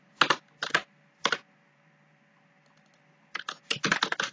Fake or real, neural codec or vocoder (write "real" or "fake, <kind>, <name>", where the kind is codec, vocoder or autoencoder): real